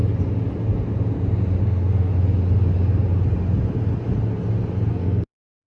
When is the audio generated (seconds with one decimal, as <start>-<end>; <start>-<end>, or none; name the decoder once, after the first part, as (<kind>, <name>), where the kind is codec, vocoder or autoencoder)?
1.6-2.1 (codec, SNAC); 4.9-5.7